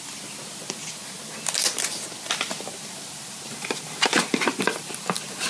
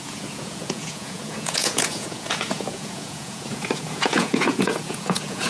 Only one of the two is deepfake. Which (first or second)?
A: second